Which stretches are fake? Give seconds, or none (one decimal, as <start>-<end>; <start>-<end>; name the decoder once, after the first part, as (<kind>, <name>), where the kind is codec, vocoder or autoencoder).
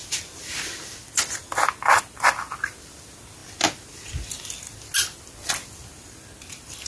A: none